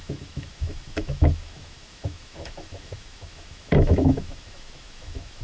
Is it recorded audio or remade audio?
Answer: remade